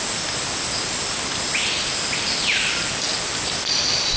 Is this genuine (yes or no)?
no